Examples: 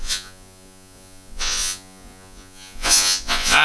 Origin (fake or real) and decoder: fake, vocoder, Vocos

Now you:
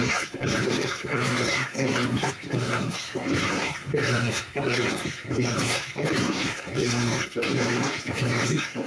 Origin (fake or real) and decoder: fake, codec, SNAC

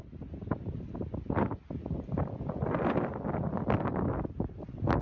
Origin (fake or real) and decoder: real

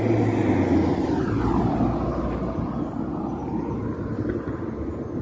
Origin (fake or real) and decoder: real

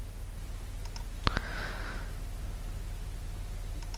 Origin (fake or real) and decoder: real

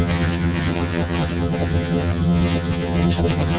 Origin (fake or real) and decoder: fake, vocoder, HiFi-GAN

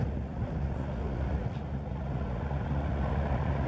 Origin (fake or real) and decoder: fake, vocoder, Vocos